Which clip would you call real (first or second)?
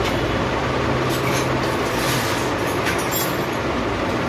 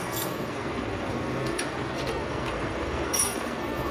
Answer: first